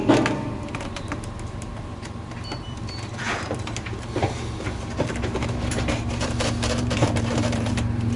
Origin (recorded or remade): remade